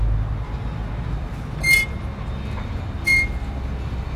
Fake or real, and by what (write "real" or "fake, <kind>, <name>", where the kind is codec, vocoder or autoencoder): real